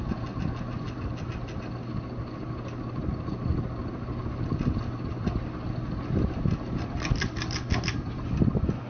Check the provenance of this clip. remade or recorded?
recorded